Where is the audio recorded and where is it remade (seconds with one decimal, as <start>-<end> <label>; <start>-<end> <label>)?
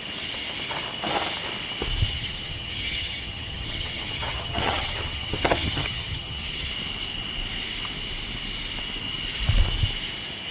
0.0-2.1 recorded; 2.1-6.7 remade; 6.7-10.5 recorded